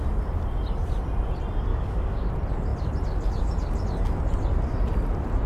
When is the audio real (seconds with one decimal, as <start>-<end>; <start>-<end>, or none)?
0.0-1.7; 2.3-5.5